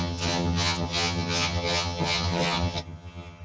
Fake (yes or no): yes